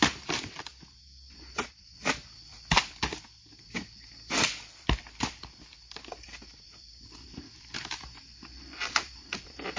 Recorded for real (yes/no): yes